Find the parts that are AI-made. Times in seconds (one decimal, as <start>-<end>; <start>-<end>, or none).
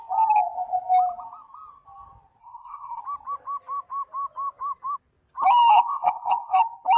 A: 2.4-3.0; 5.7-6.6